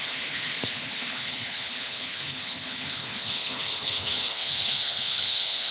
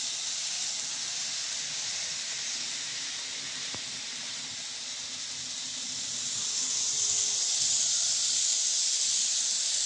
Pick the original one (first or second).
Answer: second